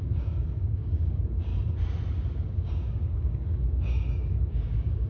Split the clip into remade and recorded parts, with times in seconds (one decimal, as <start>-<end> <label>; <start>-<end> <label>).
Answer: 0.0-1.5 remade; 1.5-2.4 recorded; 2.4-5.1 remade